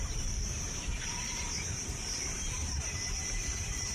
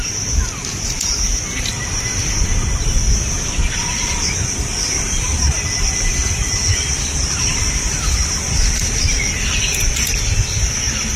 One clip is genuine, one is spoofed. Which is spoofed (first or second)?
first